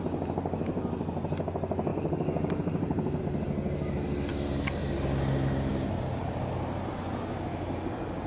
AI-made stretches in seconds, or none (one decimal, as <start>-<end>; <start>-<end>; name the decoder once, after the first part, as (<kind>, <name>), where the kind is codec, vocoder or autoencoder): 1.9-3.2 (vocoder, BigVGAN v2)